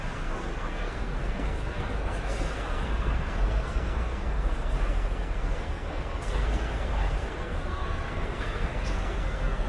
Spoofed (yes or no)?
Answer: yes